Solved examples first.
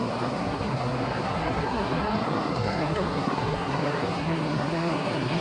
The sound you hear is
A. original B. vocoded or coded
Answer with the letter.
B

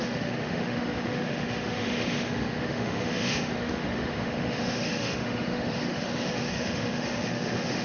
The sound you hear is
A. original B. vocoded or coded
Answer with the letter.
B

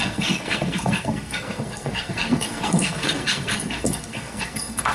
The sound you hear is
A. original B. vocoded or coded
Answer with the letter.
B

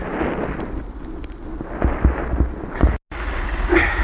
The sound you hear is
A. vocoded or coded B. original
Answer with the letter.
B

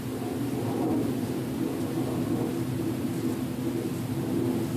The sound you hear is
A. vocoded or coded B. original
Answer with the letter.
B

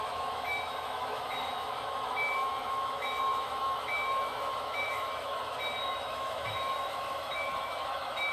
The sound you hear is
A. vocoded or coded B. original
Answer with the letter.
A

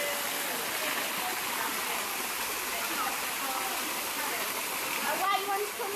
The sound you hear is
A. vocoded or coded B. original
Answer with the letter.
B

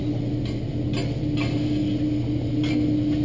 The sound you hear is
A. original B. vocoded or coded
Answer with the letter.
A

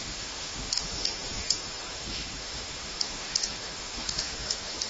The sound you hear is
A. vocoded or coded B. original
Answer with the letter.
A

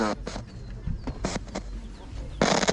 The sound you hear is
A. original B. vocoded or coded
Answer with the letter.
A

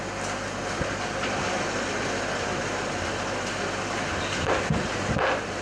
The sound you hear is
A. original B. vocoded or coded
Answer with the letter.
A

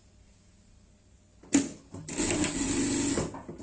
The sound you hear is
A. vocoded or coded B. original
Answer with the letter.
B